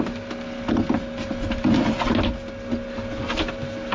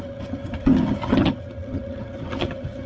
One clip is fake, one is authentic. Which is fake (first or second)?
second